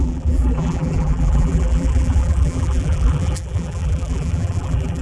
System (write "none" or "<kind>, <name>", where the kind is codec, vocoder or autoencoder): vocoder, BigVGAN v2